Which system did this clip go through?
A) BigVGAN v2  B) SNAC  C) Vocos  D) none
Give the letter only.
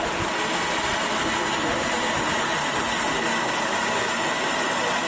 D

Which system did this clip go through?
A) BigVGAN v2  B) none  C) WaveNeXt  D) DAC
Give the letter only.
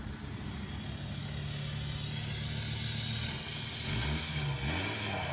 B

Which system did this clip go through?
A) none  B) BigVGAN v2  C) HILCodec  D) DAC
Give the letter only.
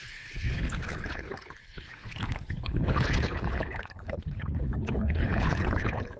C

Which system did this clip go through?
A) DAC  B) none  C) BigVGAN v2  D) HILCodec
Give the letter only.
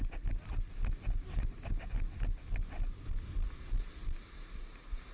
B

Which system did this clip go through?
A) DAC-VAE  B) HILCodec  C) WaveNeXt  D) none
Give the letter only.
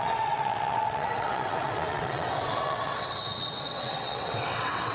C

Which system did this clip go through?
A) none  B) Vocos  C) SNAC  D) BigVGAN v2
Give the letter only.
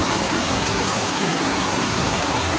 C